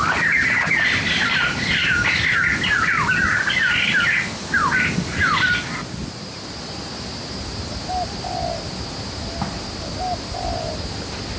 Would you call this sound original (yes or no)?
yes